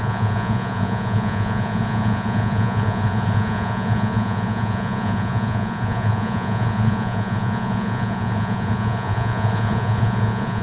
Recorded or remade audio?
remade